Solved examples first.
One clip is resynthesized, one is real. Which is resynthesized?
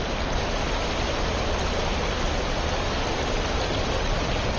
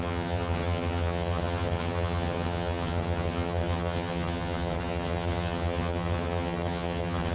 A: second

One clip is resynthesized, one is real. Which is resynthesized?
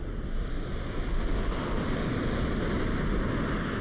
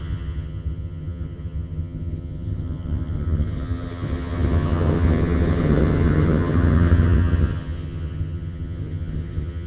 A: second